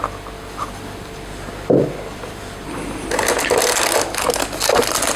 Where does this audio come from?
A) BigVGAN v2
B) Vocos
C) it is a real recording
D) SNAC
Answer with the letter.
C